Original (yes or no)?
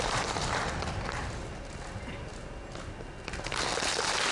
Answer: yes